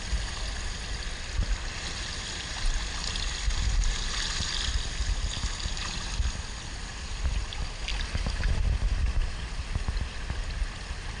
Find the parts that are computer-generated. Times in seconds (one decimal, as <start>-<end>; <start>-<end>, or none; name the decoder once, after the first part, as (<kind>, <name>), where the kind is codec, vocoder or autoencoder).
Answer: none